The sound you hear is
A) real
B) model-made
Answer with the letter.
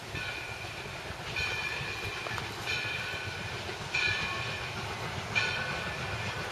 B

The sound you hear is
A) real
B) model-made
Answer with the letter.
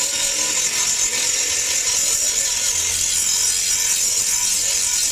A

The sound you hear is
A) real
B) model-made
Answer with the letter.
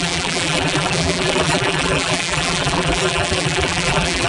B